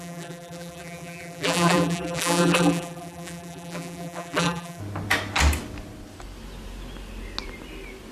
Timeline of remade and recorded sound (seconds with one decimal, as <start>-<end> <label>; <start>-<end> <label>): 0.0-4.8 remade; 4.8-8.1 recorded